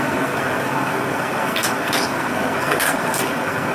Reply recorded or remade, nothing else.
remade